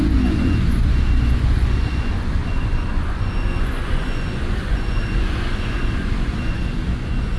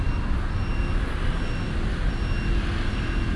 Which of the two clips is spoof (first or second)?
first